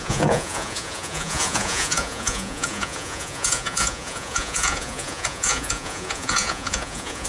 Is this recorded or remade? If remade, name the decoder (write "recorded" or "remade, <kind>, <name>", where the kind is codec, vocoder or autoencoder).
remade, vocoder, Vocos